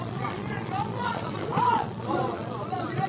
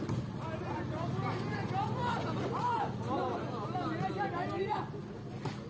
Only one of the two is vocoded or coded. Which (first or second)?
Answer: first